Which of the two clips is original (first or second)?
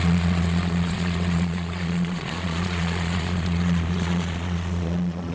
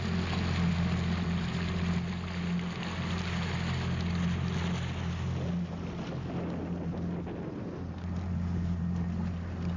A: second